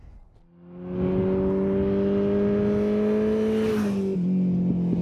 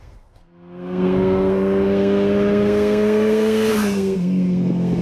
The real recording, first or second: first